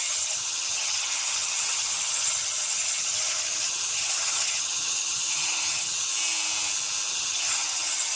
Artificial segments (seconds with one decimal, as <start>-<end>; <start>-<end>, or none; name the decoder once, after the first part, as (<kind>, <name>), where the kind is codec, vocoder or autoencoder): 0.0-6.1 (vocoder, HiFi-GAN); 7.1-8.2